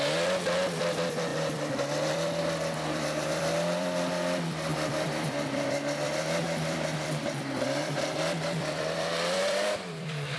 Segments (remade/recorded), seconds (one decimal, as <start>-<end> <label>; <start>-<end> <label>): 0.0-10.4 remade